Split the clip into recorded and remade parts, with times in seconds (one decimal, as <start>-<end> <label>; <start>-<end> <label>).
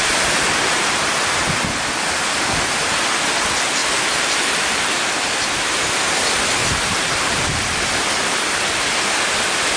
0.0-3.8 recorded; 3.8-5.6 remade; 5.6-6.6 recorded; 6.6-7.4 remade; 7.4-9.8 recorded